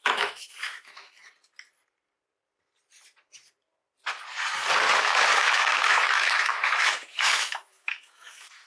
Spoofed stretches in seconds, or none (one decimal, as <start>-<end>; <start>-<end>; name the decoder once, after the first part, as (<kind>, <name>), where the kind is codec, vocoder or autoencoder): 0.0-1.2 (autoencoder, DAC-VAE); 4.9-8.7